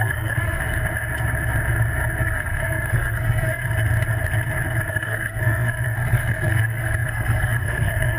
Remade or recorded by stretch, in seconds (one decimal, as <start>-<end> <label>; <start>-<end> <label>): 0.0-0.6 remade; 0.6-2.2 recorded; 2.2-3.6 remade; 3.6-4.9 recorded; 4.9-8.2 remade